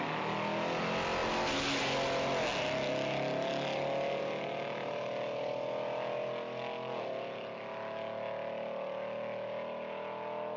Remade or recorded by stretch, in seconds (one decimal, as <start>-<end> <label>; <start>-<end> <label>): 0.0-10.6 recorded